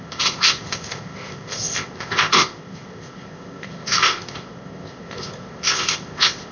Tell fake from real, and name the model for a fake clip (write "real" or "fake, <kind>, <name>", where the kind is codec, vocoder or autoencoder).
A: fake, codec, ZipCodec